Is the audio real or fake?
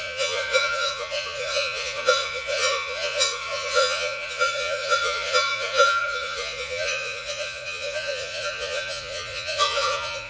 fake